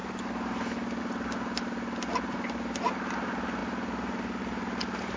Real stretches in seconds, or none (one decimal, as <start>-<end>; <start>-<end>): 0.0-5.2